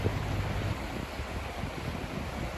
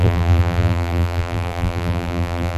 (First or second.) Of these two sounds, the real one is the first